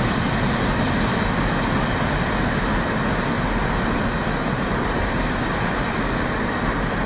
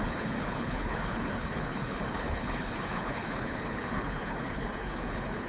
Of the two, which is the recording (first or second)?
first